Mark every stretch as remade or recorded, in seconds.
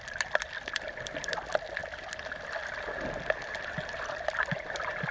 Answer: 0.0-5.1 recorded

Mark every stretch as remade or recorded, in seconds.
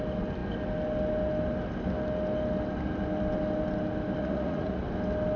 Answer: 0.0-4.2 recorded; 4.2-4.8 remade; 4.8-5.4 recorded